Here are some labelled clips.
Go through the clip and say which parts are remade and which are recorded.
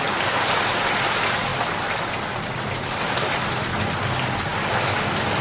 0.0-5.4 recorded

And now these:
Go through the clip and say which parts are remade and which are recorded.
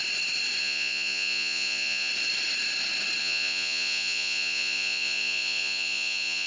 0.0-0.6 recorded; 0.6-2.1 remade; 2.1-3.2 recorded; 3.2-6.5 remade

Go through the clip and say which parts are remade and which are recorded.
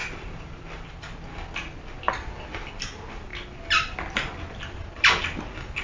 0.0-5.8 recorded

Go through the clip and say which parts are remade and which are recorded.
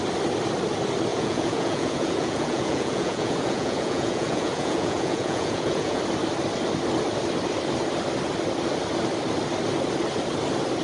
0.0-1.1 recorded; 1.1-6.0 remade; 6.0-10.8 recorded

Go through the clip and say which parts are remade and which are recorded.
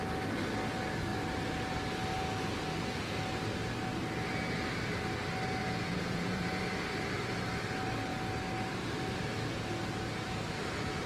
0.0-5.6 recorded; 5.6-6.6 remade; 6.6-11.1 recorded